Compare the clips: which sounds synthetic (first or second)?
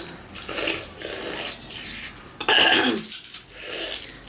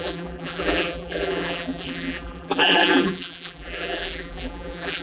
second